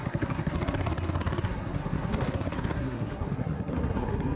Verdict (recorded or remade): remade